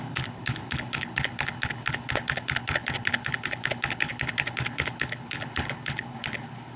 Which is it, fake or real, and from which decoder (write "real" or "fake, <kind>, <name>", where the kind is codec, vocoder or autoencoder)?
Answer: fake, codec, HILCodec